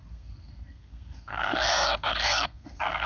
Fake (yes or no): yes